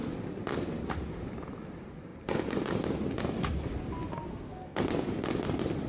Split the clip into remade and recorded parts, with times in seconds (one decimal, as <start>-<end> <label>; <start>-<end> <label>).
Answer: 0.0-4.3 recorded; 4.3-4.8 remade; 4.8-5.9 recorded